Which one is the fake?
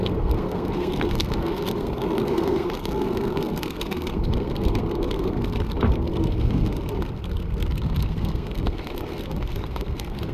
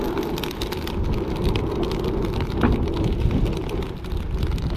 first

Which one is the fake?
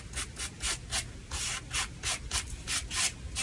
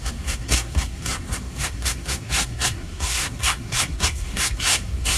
second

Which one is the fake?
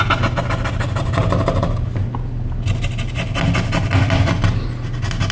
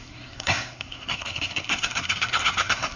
second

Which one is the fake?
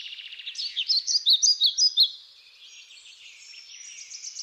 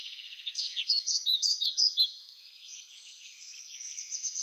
second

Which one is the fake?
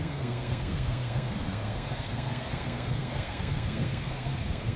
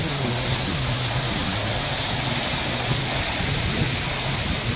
first